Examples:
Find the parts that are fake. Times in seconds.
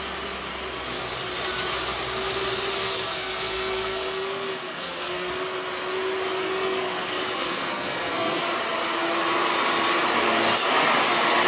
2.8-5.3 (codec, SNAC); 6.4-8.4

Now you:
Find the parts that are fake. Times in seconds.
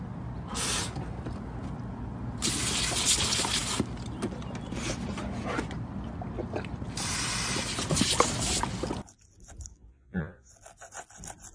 9.7-10.5 (vocoder, Vocos)